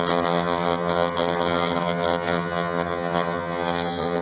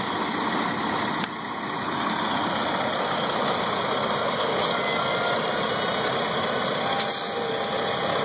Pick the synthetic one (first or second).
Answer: first